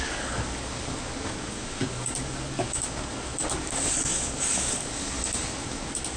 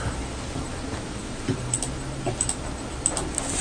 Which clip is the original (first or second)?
second